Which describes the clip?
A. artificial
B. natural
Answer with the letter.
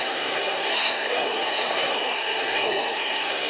A